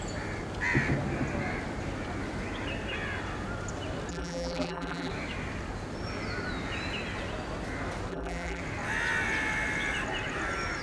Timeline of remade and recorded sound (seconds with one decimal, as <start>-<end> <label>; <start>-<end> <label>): 0.0-4.1 recorded; 4.1-5.1 remade; 5.1-8.1 recorded; 8.1-8.6 remade; 8.6-10.8 recorded